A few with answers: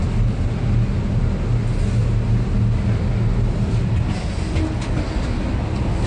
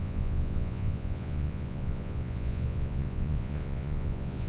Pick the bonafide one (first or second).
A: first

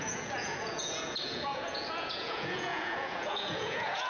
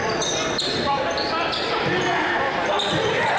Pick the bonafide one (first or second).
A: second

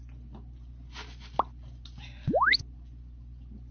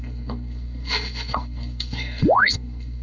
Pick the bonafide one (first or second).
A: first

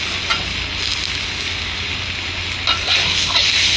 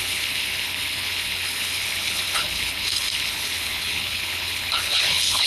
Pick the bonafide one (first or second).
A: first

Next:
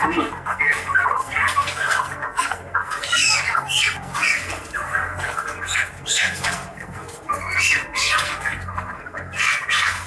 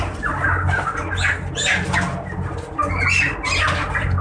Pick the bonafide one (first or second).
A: second